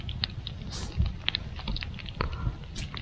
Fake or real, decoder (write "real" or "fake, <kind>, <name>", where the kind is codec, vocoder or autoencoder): real